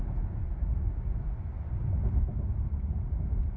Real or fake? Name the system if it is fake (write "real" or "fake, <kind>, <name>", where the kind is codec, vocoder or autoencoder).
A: real